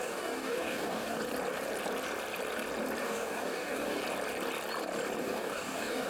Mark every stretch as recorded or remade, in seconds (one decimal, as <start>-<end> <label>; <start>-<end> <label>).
0.0-1.2 remade; 1.2-3.0 recorded; 3.0-4.0 remade; 4.0-5.2 recorded; 5.2-6.1 remade